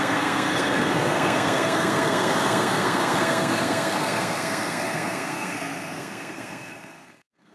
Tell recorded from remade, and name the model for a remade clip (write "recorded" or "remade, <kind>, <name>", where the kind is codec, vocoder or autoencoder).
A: remade, codec, SNAC